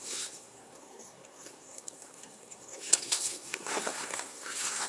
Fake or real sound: fake